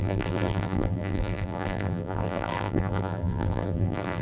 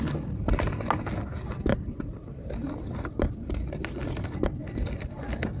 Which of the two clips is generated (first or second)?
first